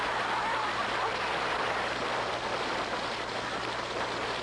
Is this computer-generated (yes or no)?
no